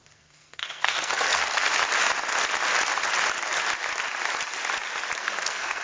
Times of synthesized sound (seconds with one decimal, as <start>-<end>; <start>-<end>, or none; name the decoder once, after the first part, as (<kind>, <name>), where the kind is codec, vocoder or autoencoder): 0.0-1.7 (codec, SNAC); 5.2-5.8